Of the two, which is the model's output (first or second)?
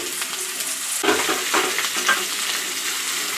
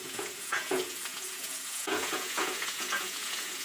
second